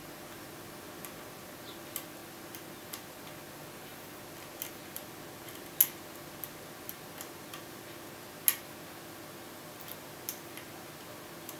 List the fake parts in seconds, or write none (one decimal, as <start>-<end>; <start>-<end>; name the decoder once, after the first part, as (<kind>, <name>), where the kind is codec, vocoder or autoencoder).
none